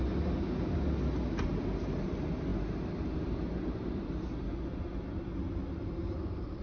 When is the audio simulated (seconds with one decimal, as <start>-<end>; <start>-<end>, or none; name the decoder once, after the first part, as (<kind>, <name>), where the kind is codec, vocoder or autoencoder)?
none